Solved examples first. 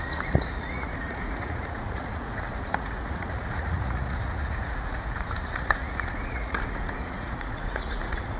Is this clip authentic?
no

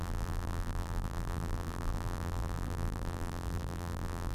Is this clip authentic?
no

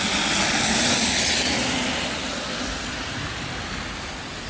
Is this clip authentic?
yes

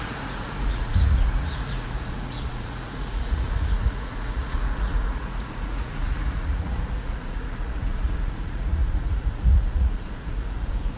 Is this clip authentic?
no